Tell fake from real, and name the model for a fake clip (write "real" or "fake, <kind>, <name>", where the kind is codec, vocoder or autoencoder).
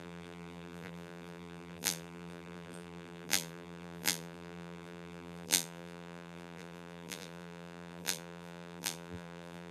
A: fake, vocoder, BigVGAN v2